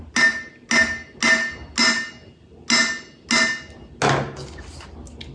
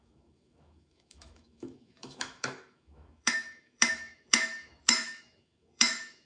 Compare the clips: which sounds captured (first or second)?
first